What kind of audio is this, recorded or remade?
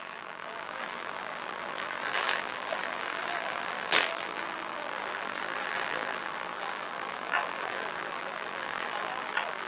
remade